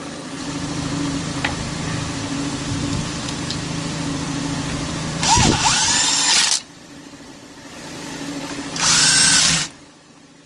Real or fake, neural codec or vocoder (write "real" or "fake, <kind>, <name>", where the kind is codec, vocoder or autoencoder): fake, vocoder, BigVGAN v2